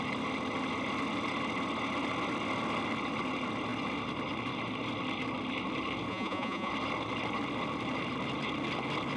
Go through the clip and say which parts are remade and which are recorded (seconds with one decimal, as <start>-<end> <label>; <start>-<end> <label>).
0.0-6.1 recorded; 6.1-6.7 remade; 6.7-9.2 recorded